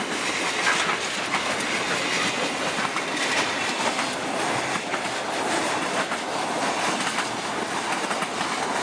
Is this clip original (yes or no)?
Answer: yes